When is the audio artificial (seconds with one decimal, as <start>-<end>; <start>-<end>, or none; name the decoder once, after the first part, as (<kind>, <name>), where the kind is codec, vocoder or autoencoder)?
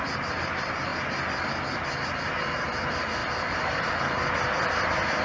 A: 3.2-3.8 (vocoder, BigVGAN v2)